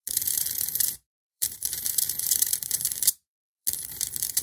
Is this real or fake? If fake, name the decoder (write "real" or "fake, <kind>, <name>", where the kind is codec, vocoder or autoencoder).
fake, vocoder, BigVGAN v2